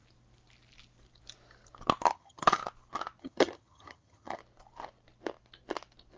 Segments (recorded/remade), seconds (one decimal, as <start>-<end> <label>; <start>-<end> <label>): 0.0-2.1 recorded; 2.1-2.6 remade; 2.6-3.2 recorded; 3.2-4.4 remade; 4.4-6.2 recorded